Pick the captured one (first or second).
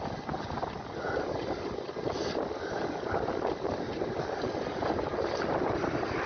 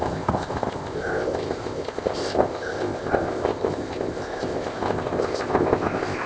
first